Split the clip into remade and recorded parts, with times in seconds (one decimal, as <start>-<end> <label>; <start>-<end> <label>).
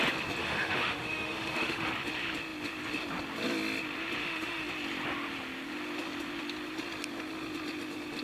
0.0-0.4 recorded; 0.4-1.9 remade; 1.9-4.2 recorded; 4.2-4.7 remade; 4.7-8.2 recorded